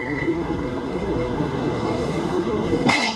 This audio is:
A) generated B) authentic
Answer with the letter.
A